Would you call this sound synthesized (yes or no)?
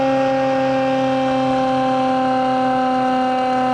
no